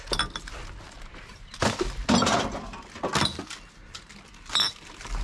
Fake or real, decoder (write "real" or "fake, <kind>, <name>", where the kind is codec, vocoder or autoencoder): fake, vocoder, BigVGAN v2